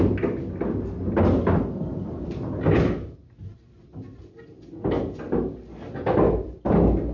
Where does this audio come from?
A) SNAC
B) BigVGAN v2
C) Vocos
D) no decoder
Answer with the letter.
D